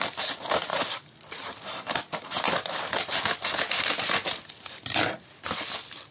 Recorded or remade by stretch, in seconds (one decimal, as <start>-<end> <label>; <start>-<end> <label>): 0.0-6.1 recorded